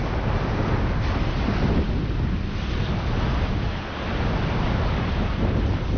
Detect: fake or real real